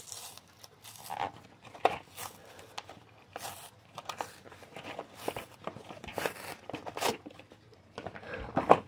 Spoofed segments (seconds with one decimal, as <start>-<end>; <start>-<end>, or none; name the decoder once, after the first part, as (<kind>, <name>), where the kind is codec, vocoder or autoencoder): none